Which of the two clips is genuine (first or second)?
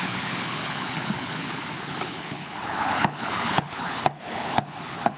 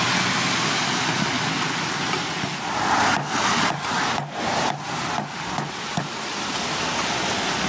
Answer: second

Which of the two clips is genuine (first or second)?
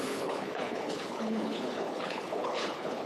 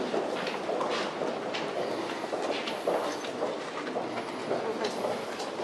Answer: second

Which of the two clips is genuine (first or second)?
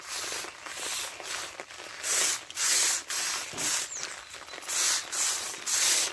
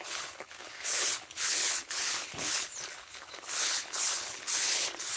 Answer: first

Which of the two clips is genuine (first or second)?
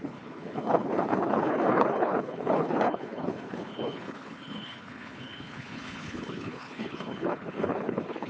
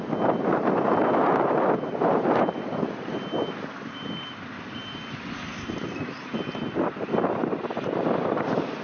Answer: second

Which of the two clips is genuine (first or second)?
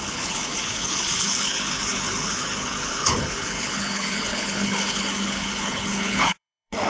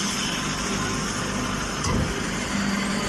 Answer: second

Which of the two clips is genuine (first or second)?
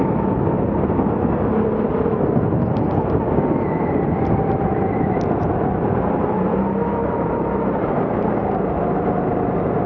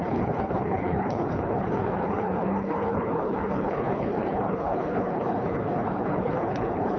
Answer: first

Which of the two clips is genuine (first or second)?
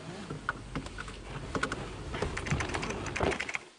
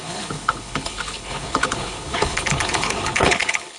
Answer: first